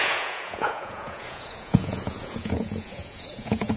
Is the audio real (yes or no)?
no